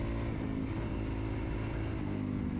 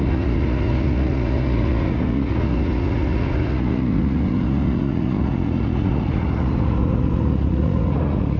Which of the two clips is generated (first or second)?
second